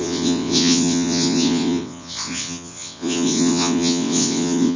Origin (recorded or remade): remade